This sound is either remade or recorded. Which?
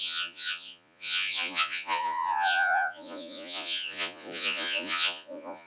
remade